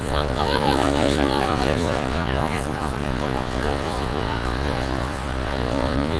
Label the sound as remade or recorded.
remade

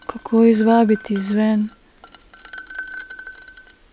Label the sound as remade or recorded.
recorded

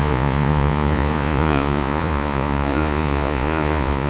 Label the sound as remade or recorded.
remade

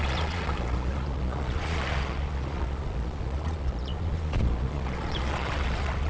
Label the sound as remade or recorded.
remade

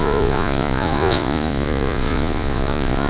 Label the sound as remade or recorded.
remade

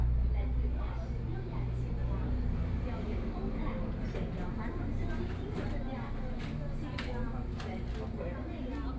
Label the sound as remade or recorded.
recorded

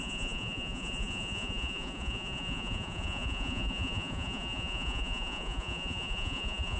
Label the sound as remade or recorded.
remade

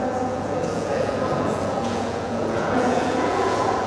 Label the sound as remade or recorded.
remade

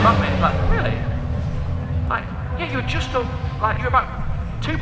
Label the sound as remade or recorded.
recorded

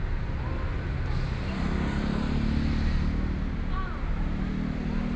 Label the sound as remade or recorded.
recorded